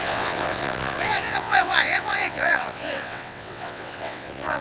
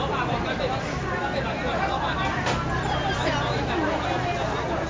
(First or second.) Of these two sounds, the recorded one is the second